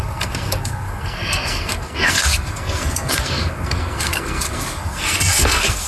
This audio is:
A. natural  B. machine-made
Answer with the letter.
B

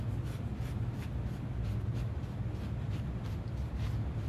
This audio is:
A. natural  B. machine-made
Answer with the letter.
A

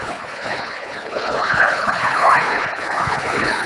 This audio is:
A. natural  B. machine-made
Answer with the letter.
B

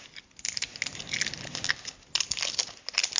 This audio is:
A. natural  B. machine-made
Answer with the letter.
A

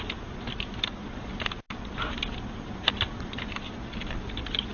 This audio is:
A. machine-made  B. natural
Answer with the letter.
B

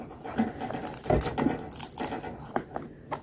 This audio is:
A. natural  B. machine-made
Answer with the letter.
A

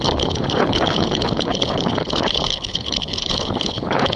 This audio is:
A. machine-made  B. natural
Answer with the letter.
A